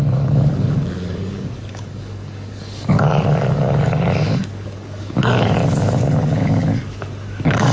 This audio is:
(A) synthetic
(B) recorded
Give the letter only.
A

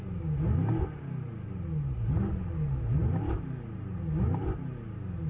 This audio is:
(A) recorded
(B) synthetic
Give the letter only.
A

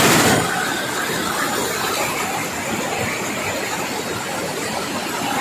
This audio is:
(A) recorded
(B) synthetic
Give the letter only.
A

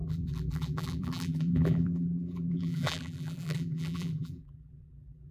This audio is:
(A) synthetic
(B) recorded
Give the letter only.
A